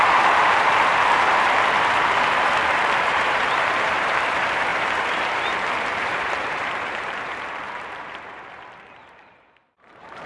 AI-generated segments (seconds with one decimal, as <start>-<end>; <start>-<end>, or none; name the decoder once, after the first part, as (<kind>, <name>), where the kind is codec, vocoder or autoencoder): 0.0-10.3 (vocoder, BigVGAN v2)